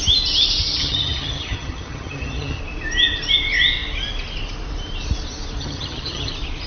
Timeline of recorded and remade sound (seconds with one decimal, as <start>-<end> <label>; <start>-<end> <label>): 0.0-0.8 recorded; 0.8-2.6 remade; 2.6-5.6 recorded; 5.6-6.3 remade; 6.3-6.7 recorded